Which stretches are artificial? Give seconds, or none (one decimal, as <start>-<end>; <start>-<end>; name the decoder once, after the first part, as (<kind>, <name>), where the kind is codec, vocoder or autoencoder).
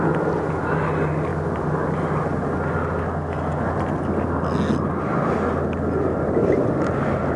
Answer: none